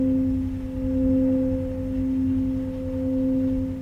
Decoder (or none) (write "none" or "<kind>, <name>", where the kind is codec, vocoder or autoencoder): none